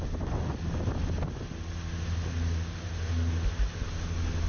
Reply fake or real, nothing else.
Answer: real